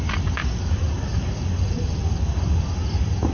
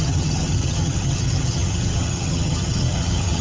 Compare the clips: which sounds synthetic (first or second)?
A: second